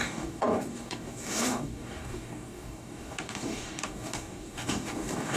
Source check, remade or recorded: remade